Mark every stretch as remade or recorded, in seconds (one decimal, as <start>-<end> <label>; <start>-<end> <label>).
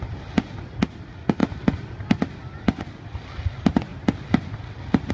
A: 0.0-5.1 recorded